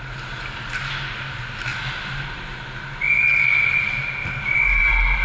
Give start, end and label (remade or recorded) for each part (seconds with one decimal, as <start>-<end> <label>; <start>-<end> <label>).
0.0-5.2 recorded